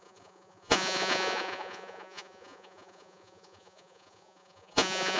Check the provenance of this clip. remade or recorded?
remade